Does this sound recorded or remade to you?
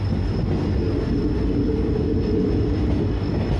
recorded